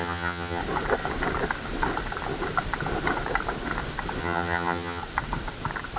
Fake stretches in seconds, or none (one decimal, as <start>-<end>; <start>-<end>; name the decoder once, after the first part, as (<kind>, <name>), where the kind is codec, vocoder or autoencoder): 0.0-0.6 (vocoder, HiFi-GAN); 4.2-5.0